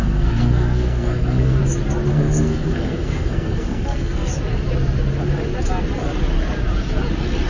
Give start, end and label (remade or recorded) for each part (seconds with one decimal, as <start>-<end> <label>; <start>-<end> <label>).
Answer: 0.0-1.6 remade; 1.6-2.1 recorded; 2.1-4.3 remade; 4.3-7.5 recorded